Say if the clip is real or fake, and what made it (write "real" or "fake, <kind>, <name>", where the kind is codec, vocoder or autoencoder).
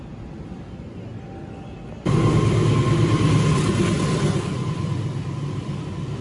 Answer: real